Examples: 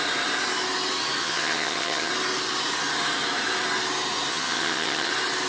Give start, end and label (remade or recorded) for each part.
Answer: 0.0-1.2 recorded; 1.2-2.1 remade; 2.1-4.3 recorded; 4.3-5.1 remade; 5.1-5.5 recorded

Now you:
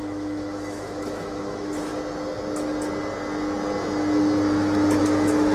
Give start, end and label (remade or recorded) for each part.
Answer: 0.0-1.9 remade; 1.9-5.0 recorded; 5.0-5.5 remade